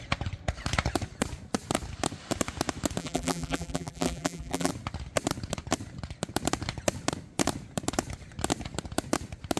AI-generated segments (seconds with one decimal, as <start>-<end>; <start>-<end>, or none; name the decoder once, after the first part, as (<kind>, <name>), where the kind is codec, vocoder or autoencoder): 3.0-4.7 (vocoder, BigVGAN v2)